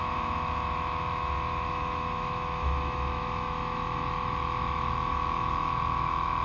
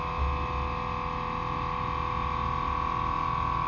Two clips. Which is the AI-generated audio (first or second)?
first